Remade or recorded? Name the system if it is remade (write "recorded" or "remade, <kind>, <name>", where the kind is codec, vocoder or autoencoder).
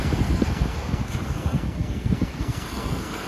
remade, codec, SNAC